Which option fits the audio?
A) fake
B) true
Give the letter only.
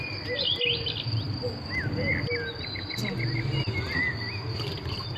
B